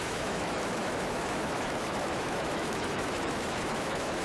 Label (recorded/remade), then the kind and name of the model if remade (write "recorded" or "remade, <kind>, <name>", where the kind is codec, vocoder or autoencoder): remade, autoencoder, DAC-VAE